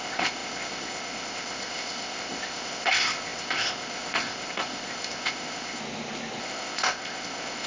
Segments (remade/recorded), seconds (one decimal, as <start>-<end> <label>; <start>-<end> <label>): 0.0-5.8 remade; 5.8-6.4 recorded; 6.4-7.7 remade